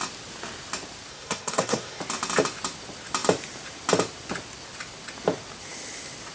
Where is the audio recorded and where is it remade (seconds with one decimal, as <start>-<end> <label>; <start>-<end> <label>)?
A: 0.0-1.1 recorded; 1.1-2.0 remade; 2.0-6.3 recorded